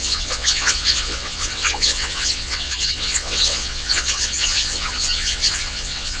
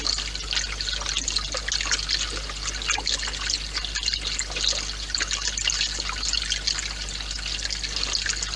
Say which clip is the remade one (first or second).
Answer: first